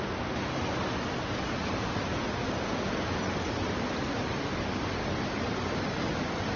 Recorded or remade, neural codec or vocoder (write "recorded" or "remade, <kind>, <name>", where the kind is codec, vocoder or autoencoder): recorded